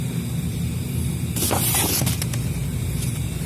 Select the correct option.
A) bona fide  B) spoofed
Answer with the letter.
A